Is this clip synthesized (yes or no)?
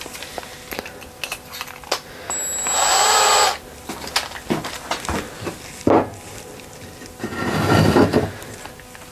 no